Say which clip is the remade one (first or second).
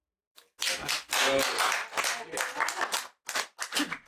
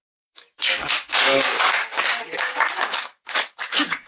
second